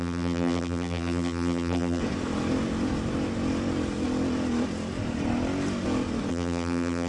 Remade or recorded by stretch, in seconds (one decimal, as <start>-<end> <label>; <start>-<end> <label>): 0.0-2.0 remade; 2.0-6.3 recorded; 6.3-7.1 remade